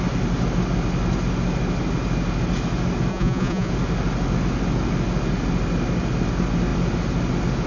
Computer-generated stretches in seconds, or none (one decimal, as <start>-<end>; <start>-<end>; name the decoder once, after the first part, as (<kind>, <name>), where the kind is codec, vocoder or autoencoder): 3.1-3.7 (vocoder, Vocos)